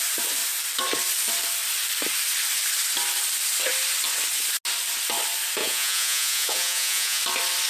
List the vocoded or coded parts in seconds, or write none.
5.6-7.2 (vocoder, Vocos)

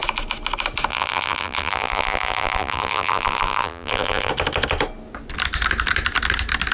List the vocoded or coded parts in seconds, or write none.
0.9-4.3 (vocoder, BigVGAN v2)

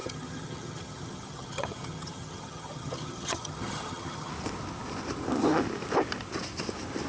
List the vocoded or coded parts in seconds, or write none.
0.0-4.3 (vocoder, HiFi-GAN)